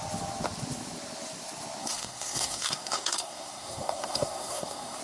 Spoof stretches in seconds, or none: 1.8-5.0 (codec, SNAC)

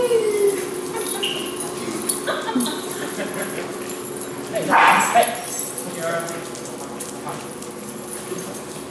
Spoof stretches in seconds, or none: none